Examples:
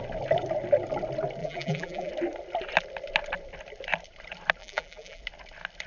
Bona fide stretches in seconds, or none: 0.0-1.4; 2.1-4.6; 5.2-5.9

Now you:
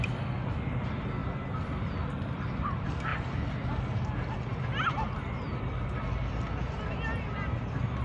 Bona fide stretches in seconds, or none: 0.0-1.2; 1.9-4.5; 5.7-8.0

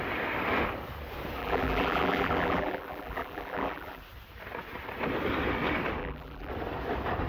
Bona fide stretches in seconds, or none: 0.0-1.4; 4.0-6.0; 6.5-7.3

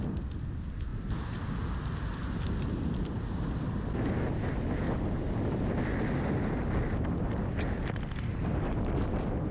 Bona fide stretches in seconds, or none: 0.0-9.5